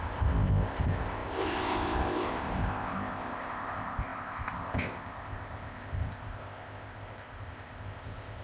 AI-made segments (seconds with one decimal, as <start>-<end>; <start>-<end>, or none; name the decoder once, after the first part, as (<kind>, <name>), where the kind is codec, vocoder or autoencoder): 0.0-8.4 (codec, ZipCodec)